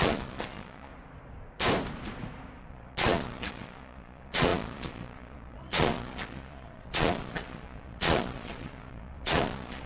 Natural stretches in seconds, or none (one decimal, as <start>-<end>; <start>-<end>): 0.9-2.6